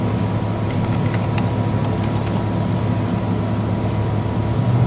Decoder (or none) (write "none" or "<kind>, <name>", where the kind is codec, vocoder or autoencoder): none